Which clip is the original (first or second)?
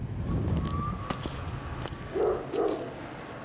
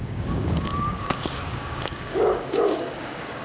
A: first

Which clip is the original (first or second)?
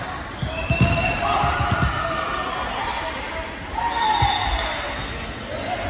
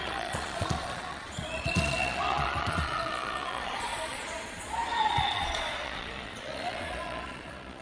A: first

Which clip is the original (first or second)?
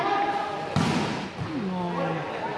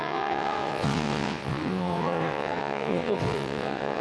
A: first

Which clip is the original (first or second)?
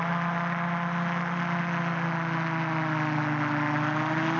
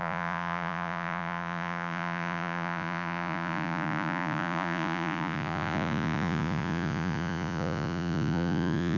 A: first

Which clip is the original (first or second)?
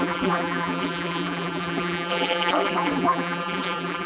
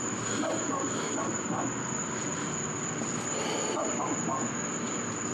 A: second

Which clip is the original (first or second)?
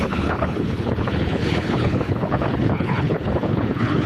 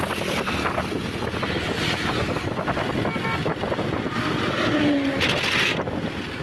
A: second